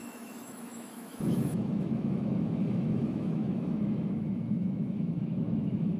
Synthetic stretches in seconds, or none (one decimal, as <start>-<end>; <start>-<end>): 0.0-6.0